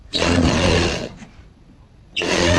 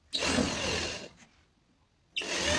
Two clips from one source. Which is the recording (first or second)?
second